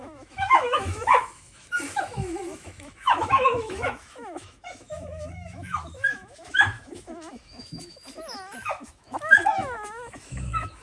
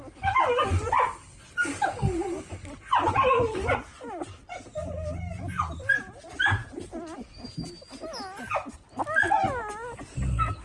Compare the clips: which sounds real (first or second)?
second